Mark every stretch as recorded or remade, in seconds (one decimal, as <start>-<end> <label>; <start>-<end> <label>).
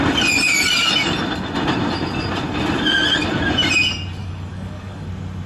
0.0-4.2 recorded; 4.2-5.1 remade; 5.1-5.5 recorded